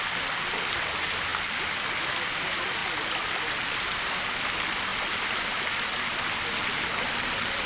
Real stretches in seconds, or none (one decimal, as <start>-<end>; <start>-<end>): 0.0-1.3; 2.0-2.8; 4.0-7.7